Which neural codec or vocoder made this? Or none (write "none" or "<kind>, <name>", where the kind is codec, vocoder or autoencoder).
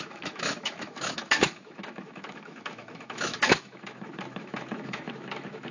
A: autoencoder, DAC-VAE